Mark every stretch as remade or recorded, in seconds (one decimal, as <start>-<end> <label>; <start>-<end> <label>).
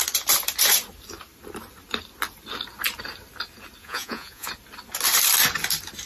0.0-3.8 recorded; 3.8-4.5 remade; 4.5-6.1 recorded